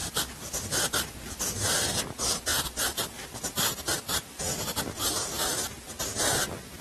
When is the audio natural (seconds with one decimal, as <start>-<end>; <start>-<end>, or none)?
2.0-2.5; 5.9-6.8